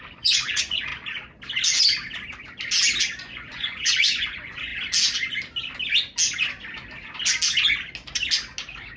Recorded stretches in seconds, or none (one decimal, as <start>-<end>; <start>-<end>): 0.9-3.2; 4.7-9.0